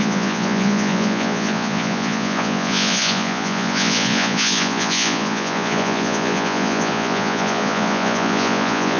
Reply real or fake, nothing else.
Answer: fake